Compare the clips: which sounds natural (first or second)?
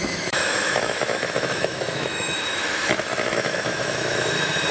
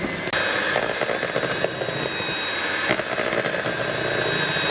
second